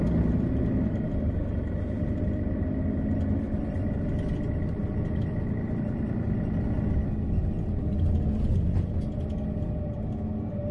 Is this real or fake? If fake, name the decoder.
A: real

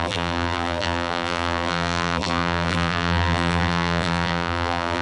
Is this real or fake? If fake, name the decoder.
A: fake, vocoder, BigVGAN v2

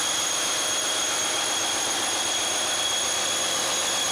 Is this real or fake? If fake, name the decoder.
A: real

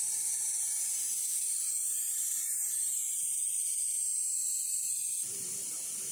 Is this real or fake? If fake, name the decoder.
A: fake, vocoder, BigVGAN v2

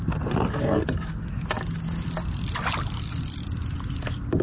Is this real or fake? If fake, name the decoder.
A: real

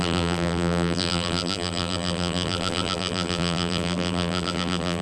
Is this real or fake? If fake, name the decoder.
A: fake, vocoder, BigVGAN v2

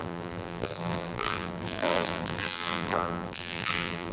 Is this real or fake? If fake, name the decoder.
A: fake, vocoder, BigVGAN v2